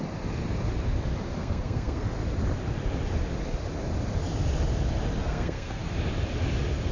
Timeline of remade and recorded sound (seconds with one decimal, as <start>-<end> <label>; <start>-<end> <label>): 0.0-1.4 recorded; 1.4-2.1 remade; 2.1-5.2 recorded; 5.2-5.8 remade; 5.8-6.9 recorded